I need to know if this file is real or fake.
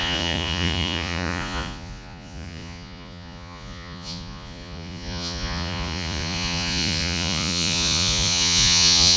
fake